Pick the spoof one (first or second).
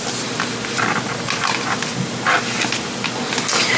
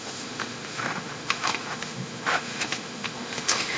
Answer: second